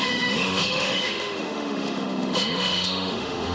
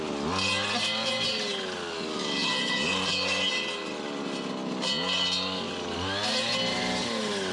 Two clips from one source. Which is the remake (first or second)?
first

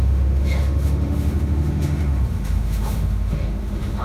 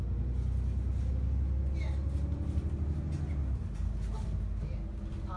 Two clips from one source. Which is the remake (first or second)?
first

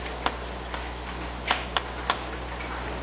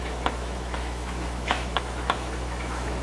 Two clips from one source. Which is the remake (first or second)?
second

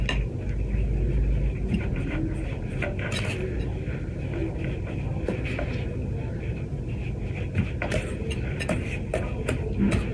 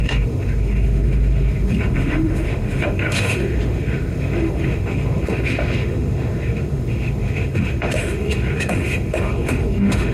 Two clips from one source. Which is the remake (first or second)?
second